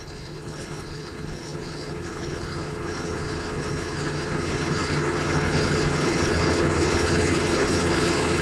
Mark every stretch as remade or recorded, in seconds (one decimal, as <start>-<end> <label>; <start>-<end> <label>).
0.0-8.4 remade